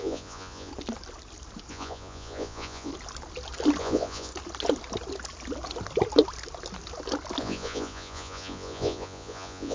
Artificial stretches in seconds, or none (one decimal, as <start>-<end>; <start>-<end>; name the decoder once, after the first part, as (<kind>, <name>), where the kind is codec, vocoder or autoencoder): 0.0-0.7 (vocoder, Vocos); 1.7-2.9; 3.8-4.3; 7.4-9.7